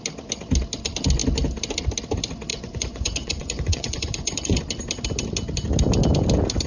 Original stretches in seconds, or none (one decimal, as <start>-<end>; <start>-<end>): 0.0-2.5; 4.6-6.7